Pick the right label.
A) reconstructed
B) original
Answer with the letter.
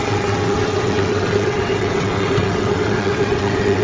A